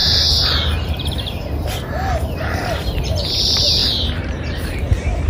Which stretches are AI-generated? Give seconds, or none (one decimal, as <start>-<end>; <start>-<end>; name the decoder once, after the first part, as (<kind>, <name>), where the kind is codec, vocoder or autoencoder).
0.0-5.3 (vocoder, BigVGAN v2)